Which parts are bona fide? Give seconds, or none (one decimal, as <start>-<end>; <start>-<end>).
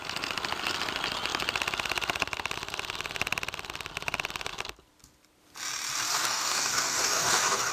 0.0-6.1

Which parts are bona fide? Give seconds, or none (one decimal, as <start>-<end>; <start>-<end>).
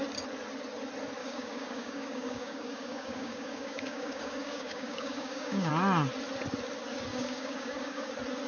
0.0-1.2; 5.7-7.1; 8.1-8.5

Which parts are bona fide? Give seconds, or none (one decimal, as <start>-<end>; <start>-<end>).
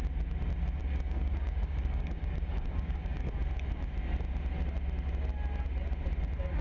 0.0-0.8; 3.3-6.6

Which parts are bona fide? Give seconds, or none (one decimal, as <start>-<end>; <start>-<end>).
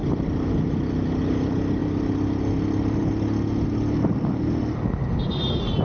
0.0-5.8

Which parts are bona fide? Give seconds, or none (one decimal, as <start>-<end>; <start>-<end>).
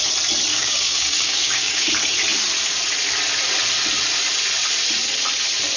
0.0-0.5; 1.9-5.8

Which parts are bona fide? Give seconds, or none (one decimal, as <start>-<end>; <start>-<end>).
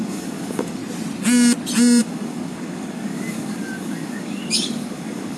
0.8-2.0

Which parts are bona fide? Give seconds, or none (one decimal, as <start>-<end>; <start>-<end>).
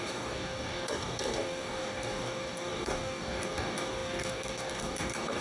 none